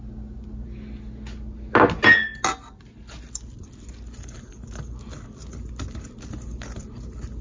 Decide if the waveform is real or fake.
real